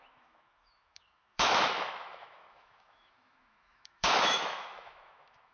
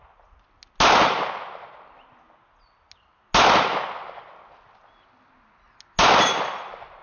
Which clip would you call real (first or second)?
second